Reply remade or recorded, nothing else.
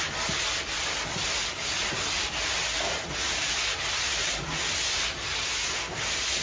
recorded